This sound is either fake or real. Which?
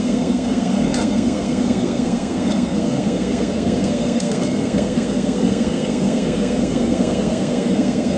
fake